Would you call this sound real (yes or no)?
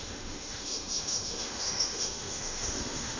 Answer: no